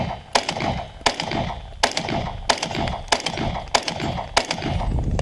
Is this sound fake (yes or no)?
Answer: no